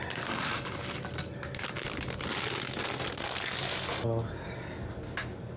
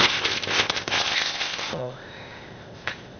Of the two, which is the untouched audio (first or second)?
first